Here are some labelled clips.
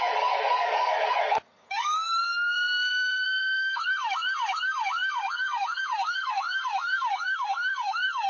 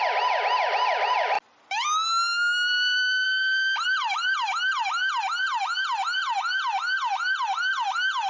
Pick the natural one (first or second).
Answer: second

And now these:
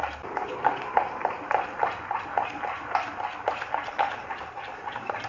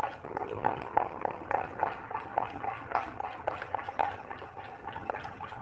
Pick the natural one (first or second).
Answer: first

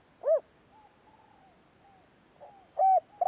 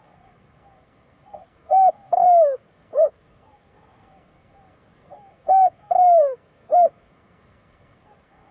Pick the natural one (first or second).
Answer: first